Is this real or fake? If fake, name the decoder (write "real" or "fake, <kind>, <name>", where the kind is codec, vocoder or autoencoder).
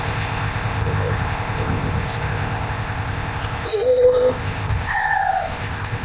fake, codec, ZipCodec